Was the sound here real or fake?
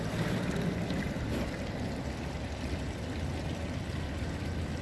real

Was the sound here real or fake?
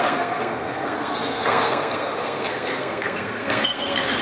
fake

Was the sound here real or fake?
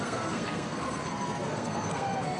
fake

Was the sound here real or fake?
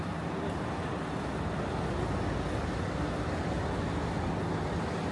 real